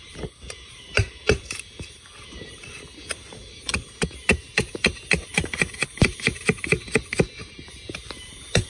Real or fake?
fake